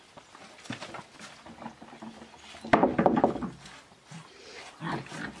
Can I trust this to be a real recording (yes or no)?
yes